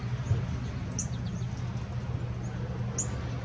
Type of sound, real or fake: real